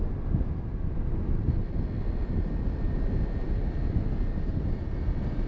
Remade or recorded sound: recorded